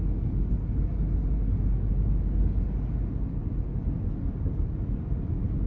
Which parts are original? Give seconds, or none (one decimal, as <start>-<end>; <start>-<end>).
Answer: 0.0-5.7